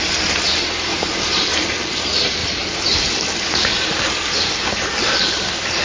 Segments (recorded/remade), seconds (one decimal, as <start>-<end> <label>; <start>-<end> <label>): 0.0-2.4 recorded; 2.4-5.8 remade